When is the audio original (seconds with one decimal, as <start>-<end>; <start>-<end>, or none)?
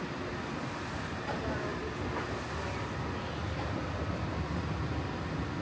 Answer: 0.0-5.6